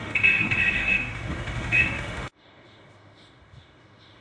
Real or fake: fake